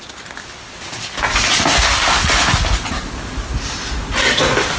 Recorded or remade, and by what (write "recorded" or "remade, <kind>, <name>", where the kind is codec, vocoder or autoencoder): recorded